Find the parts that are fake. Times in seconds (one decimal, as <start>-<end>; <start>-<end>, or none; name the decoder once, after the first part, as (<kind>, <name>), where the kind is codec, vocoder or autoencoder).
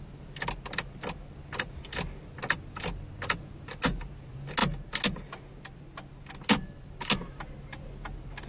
none